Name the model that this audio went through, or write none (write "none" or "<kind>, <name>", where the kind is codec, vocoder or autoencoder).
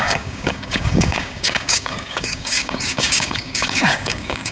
codec, DAC